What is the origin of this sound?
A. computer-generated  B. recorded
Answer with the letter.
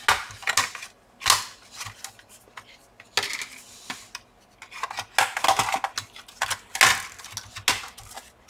B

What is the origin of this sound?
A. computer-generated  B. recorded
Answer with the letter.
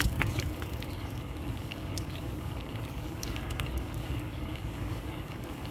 A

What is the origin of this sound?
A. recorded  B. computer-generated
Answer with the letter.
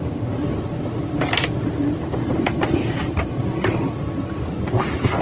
A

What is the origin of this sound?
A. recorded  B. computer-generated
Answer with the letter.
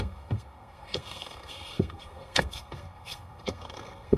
B